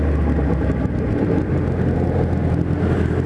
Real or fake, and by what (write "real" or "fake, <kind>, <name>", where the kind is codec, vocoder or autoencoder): real